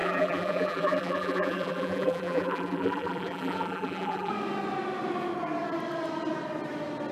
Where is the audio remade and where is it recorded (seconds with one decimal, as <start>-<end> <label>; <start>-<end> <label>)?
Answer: 0.0-4.3 remade; 4.3-7.1 recorded